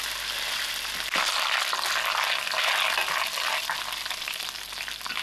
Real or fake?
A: real